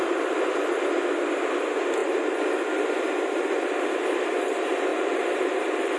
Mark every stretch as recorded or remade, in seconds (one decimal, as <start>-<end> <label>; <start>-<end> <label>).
0.0-4.9 recorded; 4.9-6.0 remade